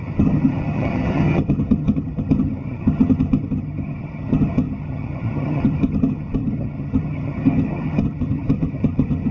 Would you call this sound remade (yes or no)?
yes